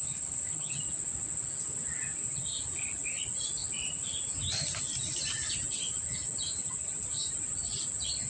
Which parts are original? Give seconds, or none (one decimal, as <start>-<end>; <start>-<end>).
0.7-8.3